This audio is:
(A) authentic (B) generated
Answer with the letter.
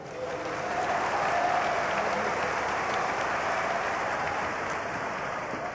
B